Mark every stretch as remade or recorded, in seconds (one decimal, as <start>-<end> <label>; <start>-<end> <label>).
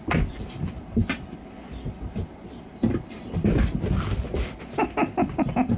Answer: 0.0-5.8 recorded